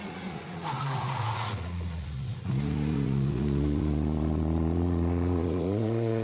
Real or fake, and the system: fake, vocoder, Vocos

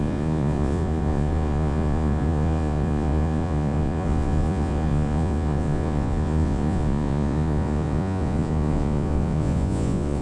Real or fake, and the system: fake, vocoder, Vocos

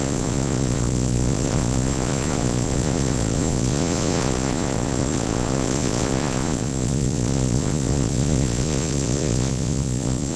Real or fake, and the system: fake, vocoder, Vocos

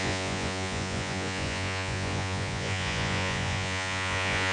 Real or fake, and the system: fake, vocoder, Vocos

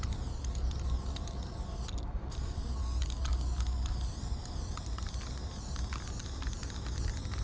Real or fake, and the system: real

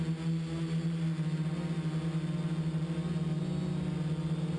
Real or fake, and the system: real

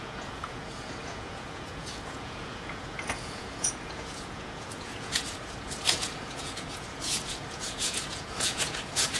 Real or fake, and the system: fake, vocoder, Vocos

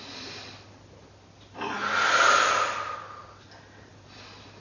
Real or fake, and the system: real